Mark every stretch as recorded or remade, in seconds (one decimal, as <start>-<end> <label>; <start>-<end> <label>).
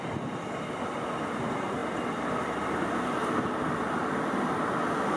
0.0-5.2 recorded